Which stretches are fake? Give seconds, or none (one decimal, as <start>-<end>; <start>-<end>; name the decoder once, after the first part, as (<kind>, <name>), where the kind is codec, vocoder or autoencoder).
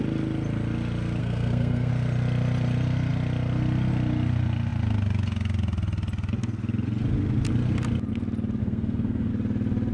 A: 1.2-1.9 (codec, SNAC); 8.6-9.3